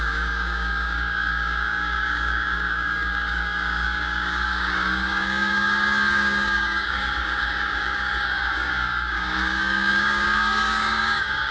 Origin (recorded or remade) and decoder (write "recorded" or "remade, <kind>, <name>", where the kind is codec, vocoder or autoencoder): remade, codec, DAC